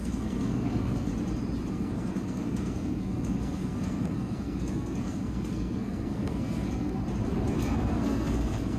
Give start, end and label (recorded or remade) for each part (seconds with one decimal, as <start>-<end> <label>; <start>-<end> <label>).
0.0-1.1 remade; 1.1-1.7 recorded; 1.7-7.0 remade; 7.0-7.5 recorded; 7.5-8.8 remade